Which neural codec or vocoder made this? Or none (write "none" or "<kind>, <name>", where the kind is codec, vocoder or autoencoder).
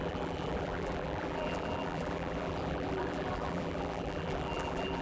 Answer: vocoder, BigVGAN v2